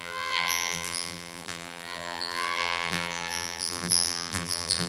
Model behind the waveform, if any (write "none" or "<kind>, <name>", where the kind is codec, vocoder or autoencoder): vocoder, BigVGAN v2